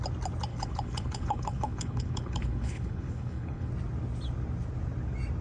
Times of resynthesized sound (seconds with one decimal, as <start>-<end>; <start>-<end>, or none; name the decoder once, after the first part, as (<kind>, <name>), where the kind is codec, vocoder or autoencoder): 0.5-3.7 (codec, HILCodec)